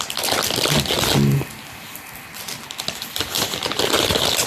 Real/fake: real